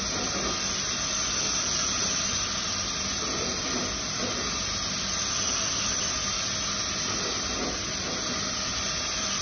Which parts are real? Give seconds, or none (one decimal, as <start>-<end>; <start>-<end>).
0.0-8.7